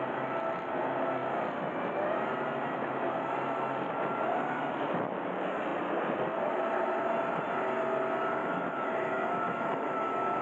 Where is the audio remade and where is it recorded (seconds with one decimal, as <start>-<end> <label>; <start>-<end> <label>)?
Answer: 0.0-8.4 recorded; 8.4-10.4 remade